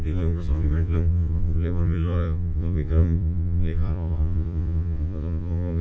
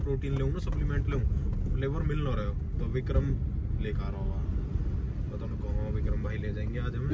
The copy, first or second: first